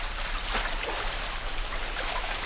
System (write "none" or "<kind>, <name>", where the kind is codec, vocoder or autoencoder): none